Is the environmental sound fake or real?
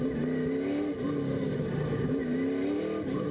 real